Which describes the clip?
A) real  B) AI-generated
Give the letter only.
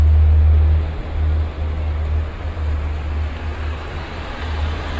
A